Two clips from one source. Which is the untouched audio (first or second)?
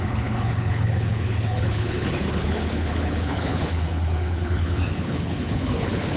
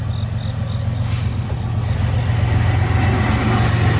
second